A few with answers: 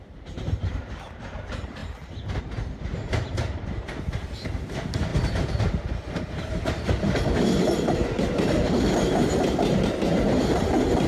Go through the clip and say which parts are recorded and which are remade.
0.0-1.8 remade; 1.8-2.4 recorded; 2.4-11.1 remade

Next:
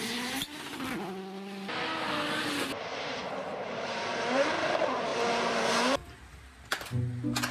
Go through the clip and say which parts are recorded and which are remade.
0.0-2.9 recorded; 2.9-4.5 remade; 4.5-5.1 recorded; 5.1-6.3 remade; 6.3-7.5 recorded

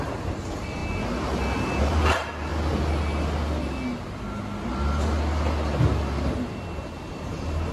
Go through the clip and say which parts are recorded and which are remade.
0.0-0.8 remade; 0.8-1.8 recorded; 1.8-2.5 remade; 2.5-7.1 recorded; 7.1-7.7 remade

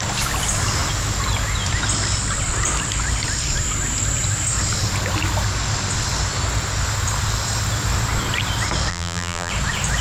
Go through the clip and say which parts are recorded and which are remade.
0.0-8.9 recorded; 8.9-9.5 remade; 9.5-10.0 recorded

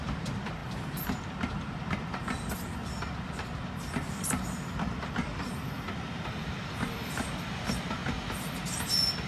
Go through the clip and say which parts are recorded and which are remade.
0.0-8.0 remade; 8.0-9.3 recorded

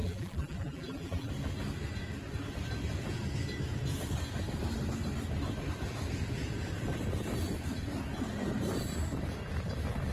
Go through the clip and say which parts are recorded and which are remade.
0.0-1.3 remade; 1.3-10.1 recorded